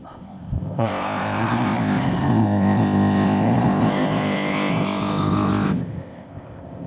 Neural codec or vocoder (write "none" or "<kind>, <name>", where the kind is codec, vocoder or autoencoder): codec, ZipCodec